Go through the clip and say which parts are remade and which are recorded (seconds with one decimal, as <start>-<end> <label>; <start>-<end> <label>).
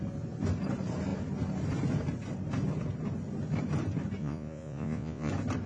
0.0-4.2 recorded; 4.2-5.3 remade; 5.3-5.7 recorded